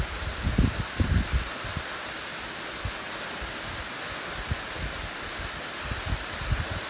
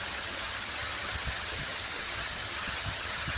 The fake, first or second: second